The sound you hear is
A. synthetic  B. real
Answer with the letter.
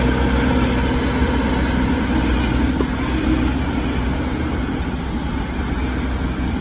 B